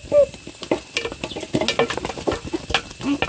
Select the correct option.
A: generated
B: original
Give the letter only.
B